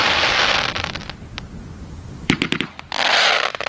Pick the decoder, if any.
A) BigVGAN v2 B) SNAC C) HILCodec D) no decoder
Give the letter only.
D